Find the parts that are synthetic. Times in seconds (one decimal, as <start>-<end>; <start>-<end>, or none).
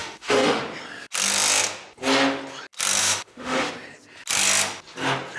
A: 0.0-0.6; 3.0-3.7